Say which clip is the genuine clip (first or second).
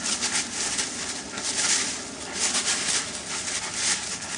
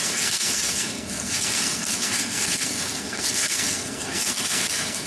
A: first